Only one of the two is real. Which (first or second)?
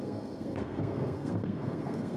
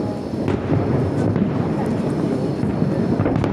second